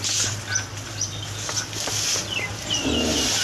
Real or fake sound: real